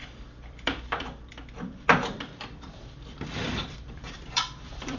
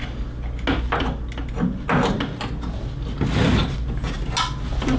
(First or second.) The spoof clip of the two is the first